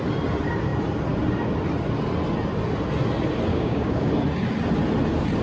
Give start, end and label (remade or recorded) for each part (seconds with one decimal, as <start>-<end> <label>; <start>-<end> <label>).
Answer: 0.0-3.5 recorded; 3.5-4.1 remade; 4.1-5.4 recorded